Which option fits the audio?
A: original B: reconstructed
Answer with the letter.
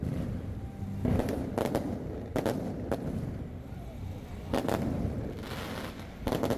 A